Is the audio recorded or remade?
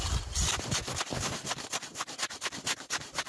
remade